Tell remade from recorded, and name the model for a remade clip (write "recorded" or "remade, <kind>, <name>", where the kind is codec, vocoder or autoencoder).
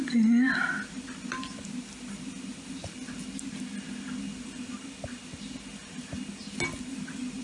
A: recorded